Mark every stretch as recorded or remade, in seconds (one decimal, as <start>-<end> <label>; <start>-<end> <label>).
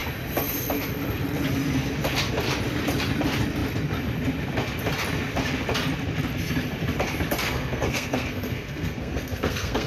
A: 0.0-7.4 recorded; 7.4-9.9 remade